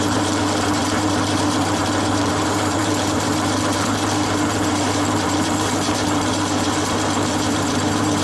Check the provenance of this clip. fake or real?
fake